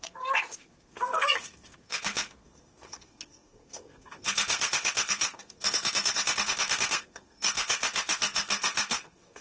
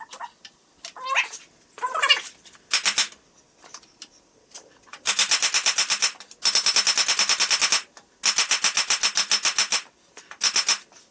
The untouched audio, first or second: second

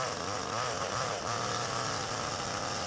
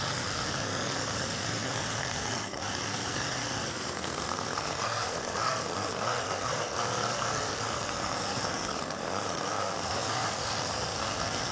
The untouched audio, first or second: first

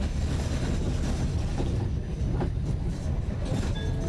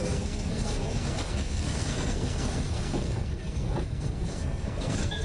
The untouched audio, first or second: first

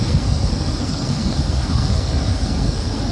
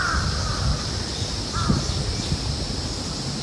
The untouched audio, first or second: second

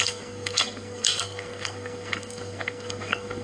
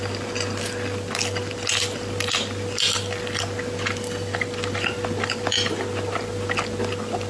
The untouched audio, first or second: second